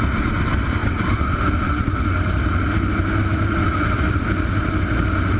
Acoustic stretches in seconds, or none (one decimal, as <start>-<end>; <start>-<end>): 0.0-5.4